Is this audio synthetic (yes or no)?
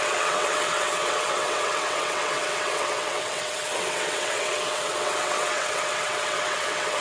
yes